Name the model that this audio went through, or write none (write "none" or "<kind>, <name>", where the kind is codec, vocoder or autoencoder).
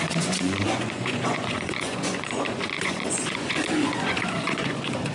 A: vocoder, Vocos